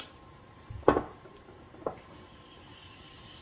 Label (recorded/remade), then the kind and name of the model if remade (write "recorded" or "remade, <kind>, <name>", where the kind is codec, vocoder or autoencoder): remade, vocoder, BigVGAN v2